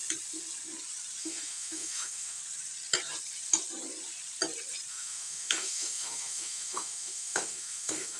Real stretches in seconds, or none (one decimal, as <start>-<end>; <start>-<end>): 0.0-1.2; 2.4-4.9